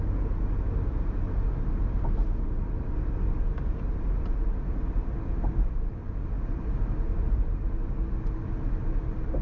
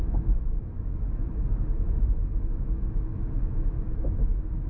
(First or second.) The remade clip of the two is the second